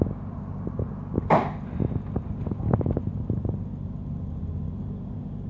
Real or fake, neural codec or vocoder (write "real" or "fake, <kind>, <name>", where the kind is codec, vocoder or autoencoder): real